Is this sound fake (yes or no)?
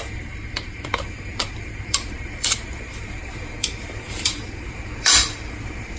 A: yes